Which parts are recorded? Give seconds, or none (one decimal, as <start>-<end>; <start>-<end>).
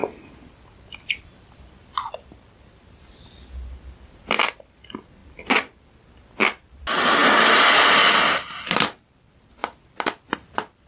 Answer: 0.0-9.6; 10.5-10.9